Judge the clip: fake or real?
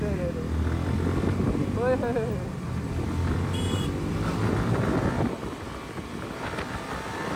real